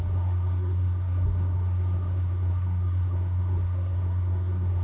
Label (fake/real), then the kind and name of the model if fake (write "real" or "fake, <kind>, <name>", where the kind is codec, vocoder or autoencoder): fake, codec, SNAC